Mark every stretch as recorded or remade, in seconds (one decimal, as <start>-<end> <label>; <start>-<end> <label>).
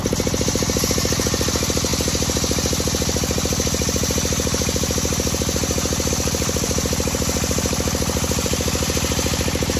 0.0-1.9 remade; 1.9-6.1 recorded; 6.1-9.8 remade